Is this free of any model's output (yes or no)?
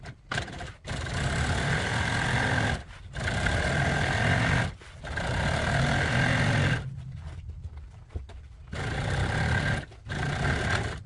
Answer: yes